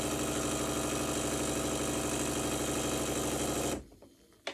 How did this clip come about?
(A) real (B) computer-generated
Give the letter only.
A